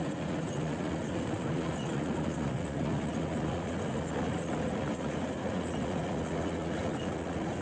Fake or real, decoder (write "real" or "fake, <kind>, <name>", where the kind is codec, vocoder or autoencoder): fake, vocoder, Vocos